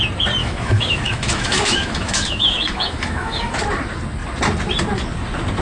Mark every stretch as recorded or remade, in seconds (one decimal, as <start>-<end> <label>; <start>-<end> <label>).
0.0-0.4 recorded; 0.4-3.5 remade; 3.5-5.6 recorded